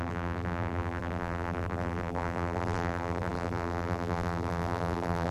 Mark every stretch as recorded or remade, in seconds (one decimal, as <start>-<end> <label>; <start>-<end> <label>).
0.0-5.3 remade